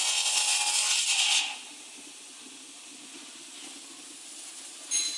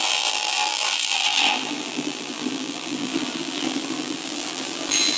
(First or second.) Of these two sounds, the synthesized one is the second